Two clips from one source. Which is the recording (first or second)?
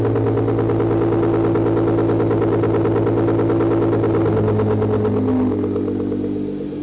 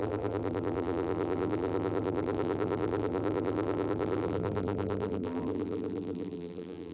first